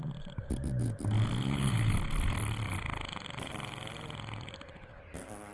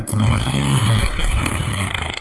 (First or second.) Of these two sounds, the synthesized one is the second